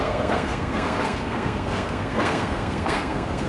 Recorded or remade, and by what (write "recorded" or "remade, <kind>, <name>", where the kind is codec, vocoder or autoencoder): remade, codec, SNAC